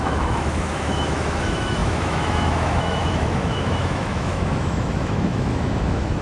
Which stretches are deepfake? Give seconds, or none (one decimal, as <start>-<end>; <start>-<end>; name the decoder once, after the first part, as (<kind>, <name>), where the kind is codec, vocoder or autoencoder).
0.0-6.2 (autoencoder, DAC-VAE)